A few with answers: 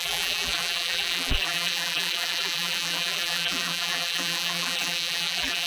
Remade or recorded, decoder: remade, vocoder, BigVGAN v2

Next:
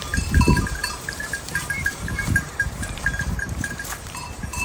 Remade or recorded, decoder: remade, vocoder, BigVGAN v2